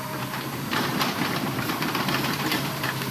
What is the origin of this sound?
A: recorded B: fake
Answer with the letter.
B